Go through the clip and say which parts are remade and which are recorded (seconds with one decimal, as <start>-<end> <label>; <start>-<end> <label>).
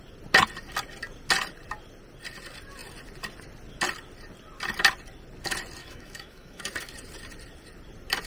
0.0-5.8 recorded; 5.8-6.6 remade; 6.6-8.3 recorded